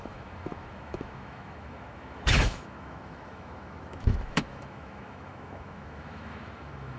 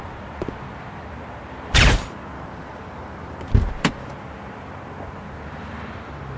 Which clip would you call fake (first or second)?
first